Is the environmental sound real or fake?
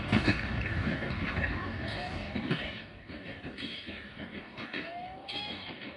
fake